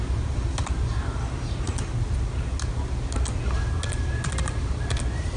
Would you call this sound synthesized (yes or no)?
no